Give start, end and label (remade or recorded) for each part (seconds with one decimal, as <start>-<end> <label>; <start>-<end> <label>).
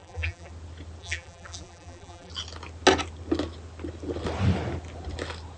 0.0-0.5 remade; 0.5-1.0 recorded; 1.0-2.3 remade; 2.3-5.6 recorded